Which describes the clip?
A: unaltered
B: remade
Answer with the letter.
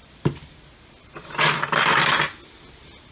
A